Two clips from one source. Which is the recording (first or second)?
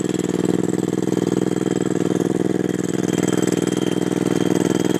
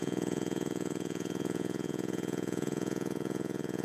first